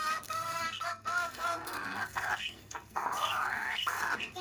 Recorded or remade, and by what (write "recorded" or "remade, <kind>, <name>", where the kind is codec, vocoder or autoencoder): remade, codec, SNAC